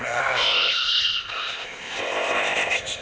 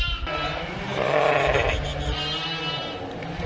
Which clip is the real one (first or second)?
second